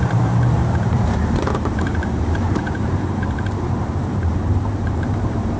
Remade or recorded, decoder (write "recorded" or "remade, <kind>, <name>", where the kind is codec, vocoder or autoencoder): remade, vocoder, BigVGAN v2